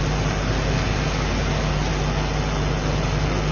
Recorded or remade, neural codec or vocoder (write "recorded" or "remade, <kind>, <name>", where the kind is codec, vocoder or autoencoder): recorded